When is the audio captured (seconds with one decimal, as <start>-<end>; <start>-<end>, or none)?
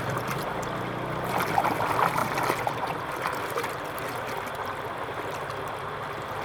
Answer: 0.0-6.4